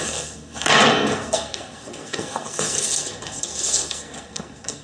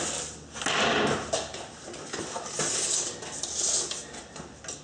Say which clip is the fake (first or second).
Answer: first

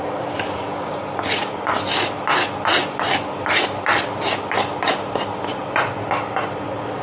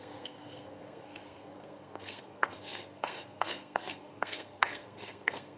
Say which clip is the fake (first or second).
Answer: second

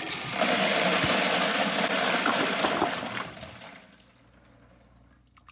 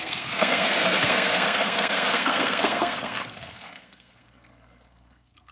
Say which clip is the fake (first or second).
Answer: second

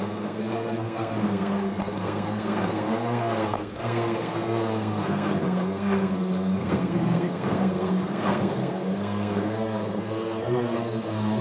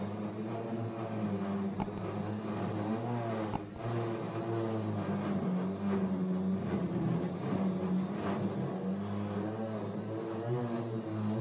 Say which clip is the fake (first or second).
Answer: first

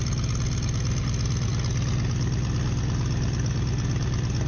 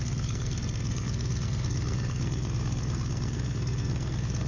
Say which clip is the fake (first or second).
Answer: second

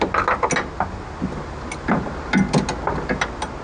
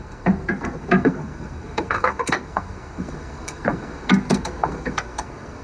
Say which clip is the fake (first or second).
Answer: second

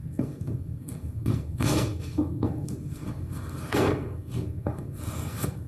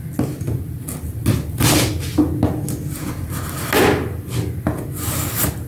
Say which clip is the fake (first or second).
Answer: first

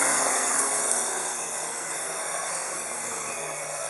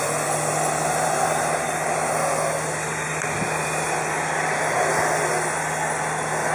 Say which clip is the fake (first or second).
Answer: first